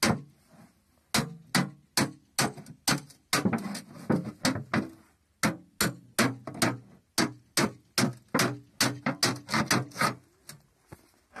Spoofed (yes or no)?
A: no